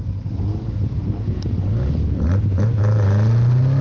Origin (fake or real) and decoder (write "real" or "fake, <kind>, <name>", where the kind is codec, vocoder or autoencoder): real